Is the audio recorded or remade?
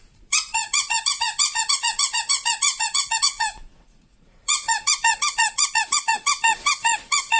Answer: remade